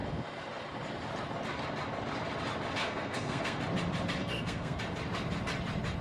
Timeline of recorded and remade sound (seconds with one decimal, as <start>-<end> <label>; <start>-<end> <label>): 0.0-2.8 recorded; 2.8-3.6 remade; 3.6-4.2 recorded; 4.2-4.8 remade; 4.8-6.0 recorded